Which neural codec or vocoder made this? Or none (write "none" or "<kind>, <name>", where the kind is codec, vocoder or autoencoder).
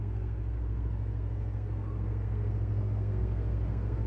codec, SNAC